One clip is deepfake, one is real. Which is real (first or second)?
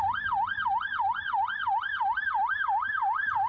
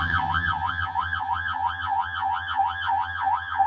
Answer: first